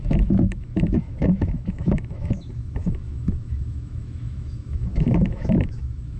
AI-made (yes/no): yes